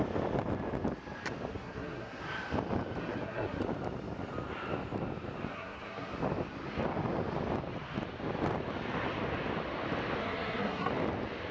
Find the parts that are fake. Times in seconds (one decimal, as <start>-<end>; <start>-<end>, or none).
1.5-2.2; 3.0-3.6; 5.5-6.1; 10.2-10.9